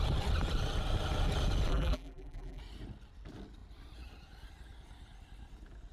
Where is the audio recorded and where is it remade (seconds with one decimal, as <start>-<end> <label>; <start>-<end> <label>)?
0.0-1.7 recorded; 1.7-2.6 remade; 2.6-5.9 recorded